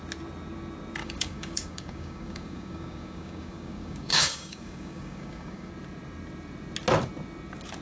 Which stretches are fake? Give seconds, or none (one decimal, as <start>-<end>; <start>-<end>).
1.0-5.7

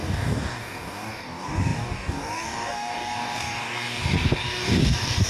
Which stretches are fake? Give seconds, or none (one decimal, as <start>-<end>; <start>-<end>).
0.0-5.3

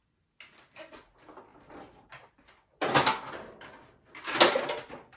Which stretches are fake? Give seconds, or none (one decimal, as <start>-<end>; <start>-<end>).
none

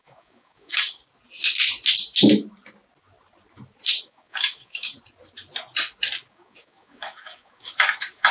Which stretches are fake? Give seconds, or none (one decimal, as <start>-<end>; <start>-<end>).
0.0-1.0; 4.0-4.9; 6.3-8.3

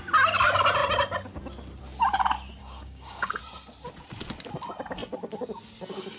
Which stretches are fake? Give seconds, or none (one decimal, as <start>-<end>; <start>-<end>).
2.6-3.4